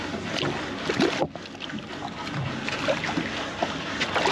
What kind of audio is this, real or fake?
real